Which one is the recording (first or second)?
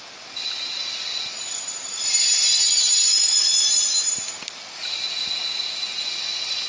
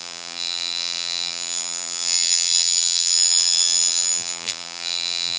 first